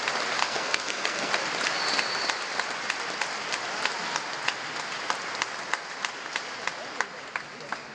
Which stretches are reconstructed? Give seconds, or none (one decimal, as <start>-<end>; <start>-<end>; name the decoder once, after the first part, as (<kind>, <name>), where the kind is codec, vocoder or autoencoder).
0.4-1.3 (codec, SNAC)